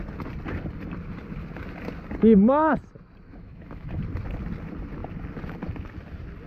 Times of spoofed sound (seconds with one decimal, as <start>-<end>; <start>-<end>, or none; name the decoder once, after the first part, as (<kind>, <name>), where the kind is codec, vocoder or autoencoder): 3.3-4.0 (autoencoder, DAC-VAE)